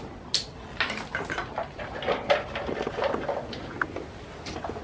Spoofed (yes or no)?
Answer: no